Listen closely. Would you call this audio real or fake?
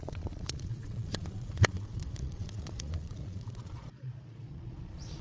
fake